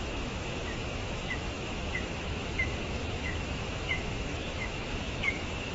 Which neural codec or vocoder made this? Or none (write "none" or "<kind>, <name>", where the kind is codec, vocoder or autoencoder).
autoencoder, DAC-VAE